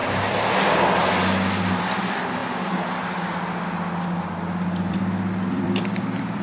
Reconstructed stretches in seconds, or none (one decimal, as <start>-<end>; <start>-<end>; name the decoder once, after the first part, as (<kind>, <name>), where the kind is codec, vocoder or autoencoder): 1.7-2.4 (vocoder, BigVGAN v2); 4.9-6.4

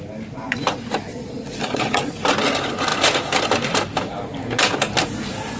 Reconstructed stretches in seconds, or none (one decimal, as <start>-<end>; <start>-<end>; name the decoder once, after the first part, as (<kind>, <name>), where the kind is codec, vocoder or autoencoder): 1.1-2.1 (vocoder, Vocos)

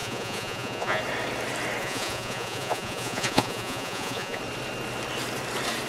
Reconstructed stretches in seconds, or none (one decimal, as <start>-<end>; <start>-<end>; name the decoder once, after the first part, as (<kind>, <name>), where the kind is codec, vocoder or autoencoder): 0.0-1.0 (vocoder, Vocos); 1.8-4.4